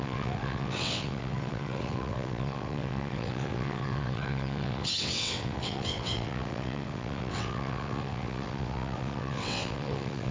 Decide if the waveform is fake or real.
fake